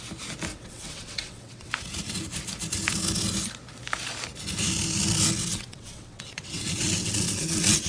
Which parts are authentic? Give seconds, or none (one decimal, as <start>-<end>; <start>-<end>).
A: 0.0-0.5; 1.7-5.5